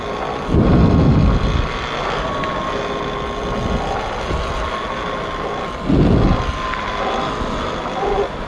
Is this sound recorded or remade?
recorded